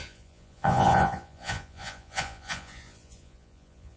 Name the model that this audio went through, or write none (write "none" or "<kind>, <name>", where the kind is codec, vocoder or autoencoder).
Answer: vocoder, Vocos